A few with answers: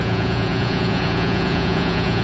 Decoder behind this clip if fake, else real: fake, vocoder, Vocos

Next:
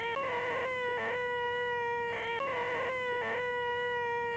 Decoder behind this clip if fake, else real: real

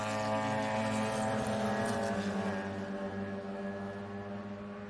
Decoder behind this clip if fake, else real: real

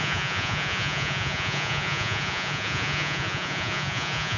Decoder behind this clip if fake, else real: fake, vocoder, Vocos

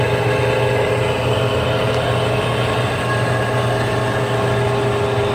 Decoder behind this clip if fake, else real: real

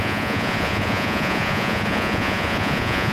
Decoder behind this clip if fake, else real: fake, vocoder, Vocos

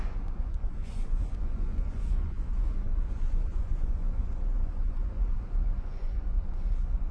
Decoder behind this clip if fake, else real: fake, vocoder, Vocos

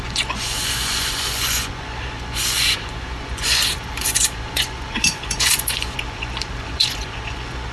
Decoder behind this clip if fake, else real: fake, vocoder, Vocos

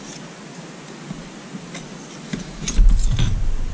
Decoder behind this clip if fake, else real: real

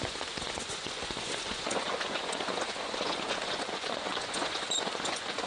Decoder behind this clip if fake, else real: fake, vocoder, Vocos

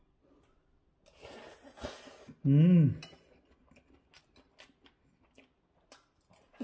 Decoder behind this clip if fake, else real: real